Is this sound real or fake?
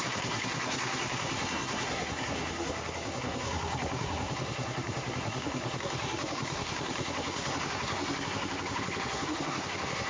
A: fake